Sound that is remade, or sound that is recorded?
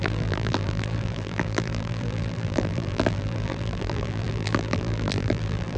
remade